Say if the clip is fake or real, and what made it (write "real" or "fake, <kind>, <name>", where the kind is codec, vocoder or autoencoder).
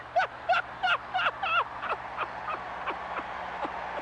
real